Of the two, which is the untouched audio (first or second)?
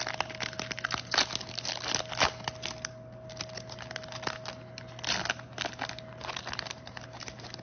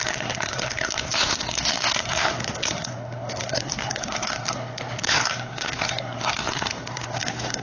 first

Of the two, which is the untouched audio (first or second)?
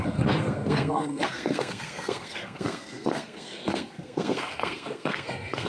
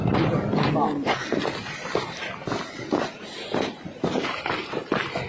second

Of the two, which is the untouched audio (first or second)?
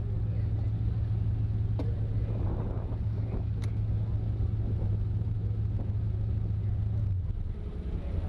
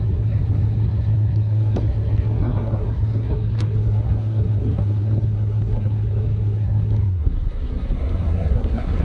first